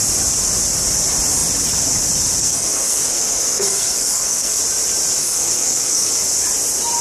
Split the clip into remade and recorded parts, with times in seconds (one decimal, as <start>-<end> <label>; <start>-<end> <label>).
0.0-2.4 recorded; 2.4-4.6 remade; 4.6-5.2 recorded; 5.2-6.1 remade; 6.1-7.0 recorded